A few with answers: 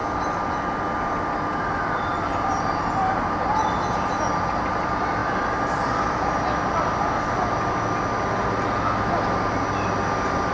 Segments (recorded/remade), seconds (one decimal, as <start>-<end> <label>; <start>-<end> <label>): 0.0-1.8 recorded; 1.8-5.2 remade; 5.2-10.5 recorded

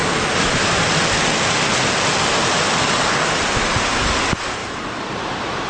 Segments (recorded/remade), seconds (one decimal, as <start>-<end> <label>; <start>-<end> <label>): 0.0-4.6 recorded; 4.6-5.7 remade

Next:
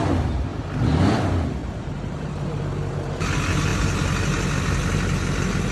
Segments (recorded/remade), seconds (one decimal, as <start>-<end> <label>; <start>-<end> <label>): 0.0-1.6 recorded; 1.6-2.6 remade; 2.6-5.7 recorded